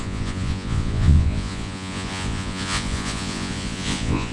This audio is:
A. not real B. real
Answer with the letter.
A